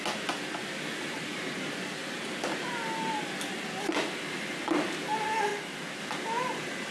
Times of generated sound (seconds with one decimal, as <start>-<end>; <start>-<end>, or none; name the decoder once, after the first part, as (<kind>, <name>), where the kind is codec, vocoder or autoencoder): none